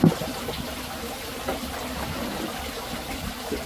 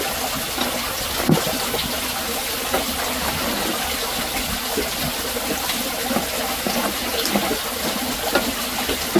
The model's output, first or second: first